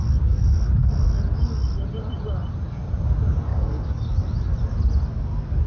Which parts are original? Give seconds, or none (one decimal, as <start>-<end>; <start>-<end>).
0.0-3.5; 4.0-5.7